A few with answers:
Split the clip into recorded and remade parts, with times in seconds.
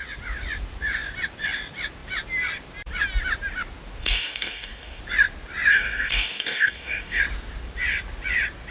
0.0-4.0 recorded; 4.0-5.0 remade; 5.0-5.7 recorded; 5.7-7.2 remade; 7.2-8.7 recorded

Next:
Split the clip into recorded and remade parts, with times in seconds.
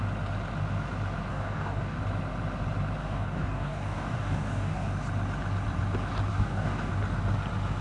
0.0-1.3 recorded; 1.3-2.0 remade; 2.0-3.0 recorded; 3.0-4.9 remade; 4.9-6.3 recorded; 6.3-6.9 remade; 6.9-7.8 recorded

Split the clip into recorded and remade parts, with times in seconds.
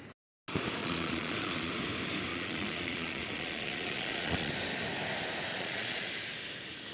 0.0-0.8 recorded; 0.8-1.7 remade; 1.7-2.3 recorded; 2.3-4.5 remade; 4.5-5.5 recorded; 5.5-6.1 remade; 6.1-6.9 recorded